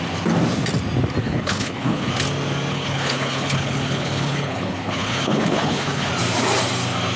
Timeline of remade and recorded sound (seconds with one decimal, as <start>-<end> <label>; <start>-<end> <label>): 0.0-1.2 recorded; 1.2-2.1 remade; 2.1-2.7 recorded; 2.7-6.1 remade; 6.1-7.2 recorded